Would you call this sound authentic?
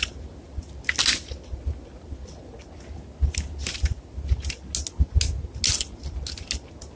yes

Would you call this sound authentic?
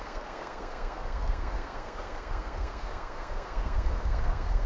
no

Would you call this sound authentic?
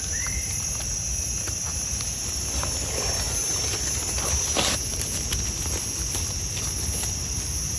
yes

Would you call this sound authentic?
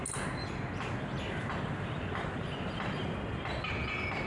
yes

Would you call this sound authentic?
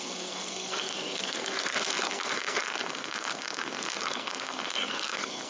no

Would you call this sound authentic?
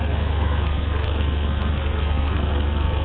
no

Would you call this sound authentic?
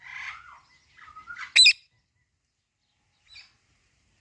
yes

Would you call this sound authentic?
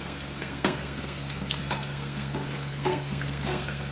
no